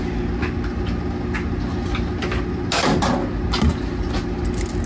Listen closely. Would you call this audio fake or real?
real